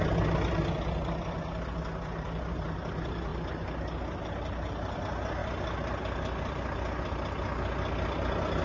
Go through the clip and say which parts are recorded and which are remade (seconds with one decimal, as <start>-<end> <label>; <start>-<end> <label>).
0.0-8.6 recorded